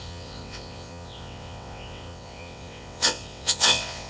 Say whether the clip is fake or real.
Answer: fake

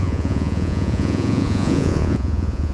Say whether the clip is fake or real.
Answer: fake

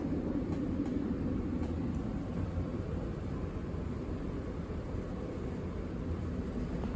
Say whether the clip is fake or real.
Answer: fake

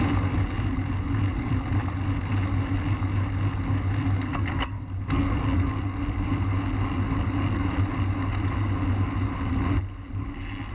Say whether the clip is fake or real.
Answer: real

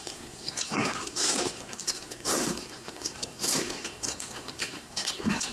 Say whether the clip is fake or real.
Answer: fake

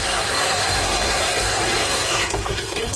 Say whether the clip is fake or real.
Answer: fake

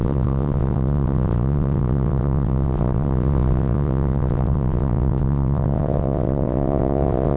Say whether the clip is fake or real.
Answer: fake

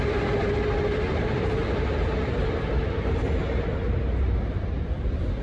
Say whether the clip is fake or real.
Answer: real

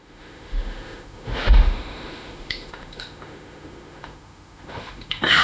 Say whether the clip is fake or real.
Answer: fake